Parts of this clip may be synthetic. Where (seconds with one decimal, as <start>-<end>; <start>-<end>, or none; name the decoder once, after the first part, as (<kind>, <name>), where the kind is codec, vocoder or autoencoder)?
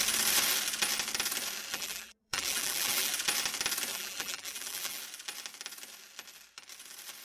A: 1.7-3.1 (vocoder, BigVGAN v2); 3.9-5.0